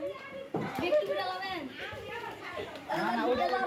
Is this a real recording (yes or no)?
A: no